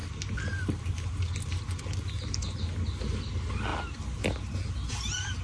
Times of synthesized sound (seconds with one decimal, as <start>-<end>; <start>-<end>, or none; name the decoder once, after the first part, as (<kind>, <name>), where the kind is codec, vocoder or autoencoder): none